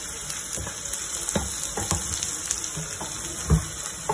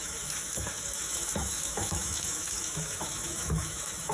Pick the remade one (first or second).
second